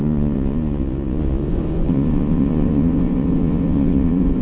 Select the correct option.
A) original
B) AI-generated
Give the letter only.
B